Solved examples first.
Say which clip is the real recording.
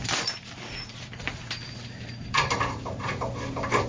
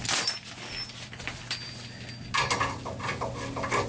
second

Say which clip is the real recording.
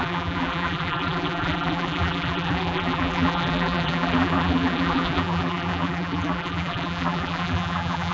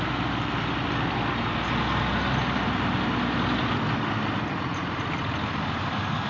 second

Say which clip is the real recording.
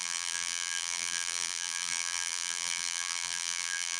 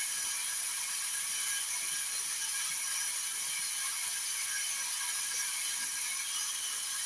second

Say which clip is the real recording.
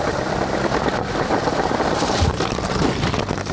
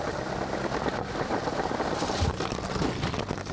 second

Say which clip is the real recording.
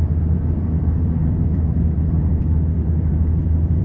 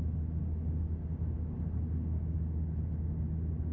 second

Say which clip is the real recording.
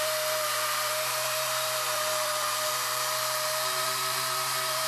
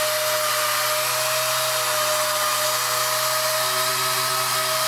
second